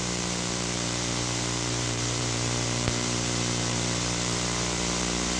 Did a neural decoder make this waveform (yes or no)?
yes